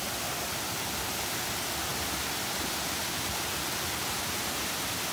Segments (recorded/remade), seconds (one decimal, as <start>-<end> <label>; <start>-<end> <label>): 0.0-5.1 recorded